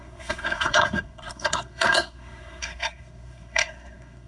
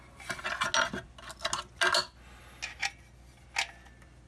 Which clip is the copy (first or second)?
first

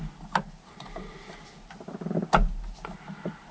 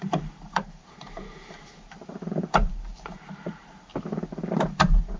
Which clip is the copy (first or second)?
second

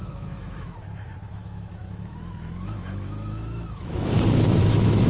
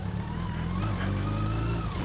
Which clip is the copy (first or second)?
first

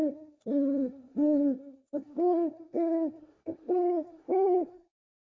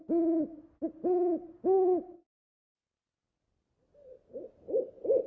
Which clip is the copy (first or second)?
first